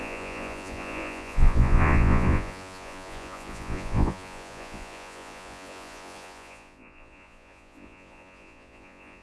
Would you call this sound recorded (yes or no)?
no